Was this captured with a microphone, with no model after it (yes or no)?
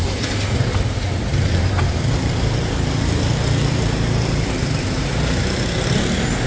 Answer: no